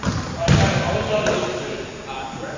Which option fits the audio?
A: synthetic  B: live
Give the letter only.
B